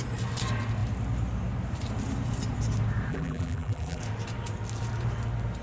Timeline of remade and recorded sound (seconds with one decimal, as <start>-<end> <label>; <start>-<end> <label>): 0.0-3.1 recorded; 3.1-4.0 remade; 4.0-5.6 recorded